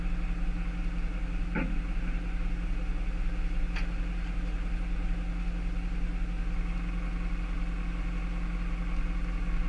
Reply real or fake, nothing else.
real